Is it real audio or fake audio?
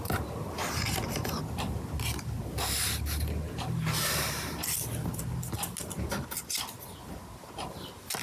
real